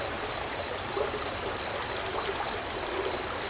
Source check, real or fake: real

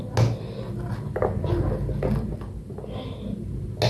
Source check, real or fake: real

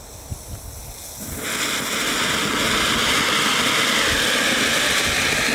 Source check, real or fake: real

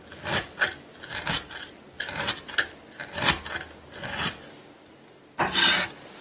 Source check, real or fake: real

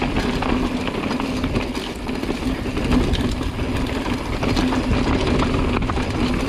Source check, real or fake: real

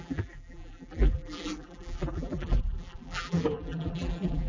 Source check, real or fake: fake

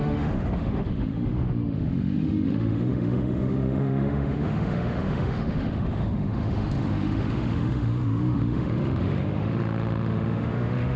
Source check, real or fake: fake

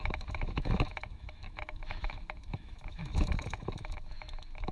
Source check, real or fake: fake